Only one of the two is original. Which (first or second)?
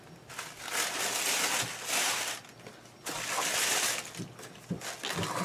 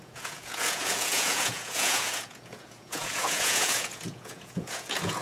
first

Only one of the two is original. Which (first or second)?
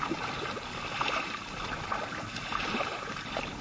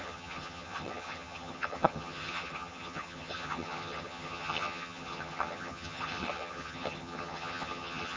first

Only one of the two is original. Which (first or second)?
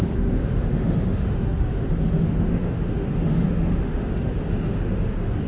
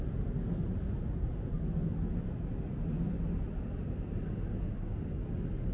second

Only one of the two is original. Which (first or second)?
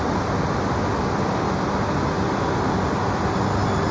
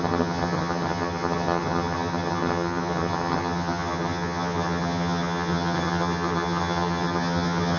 first